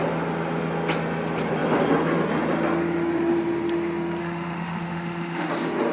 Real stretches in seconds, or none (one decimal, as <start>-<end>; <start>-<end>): 0.0-4.2; 5.5-5.9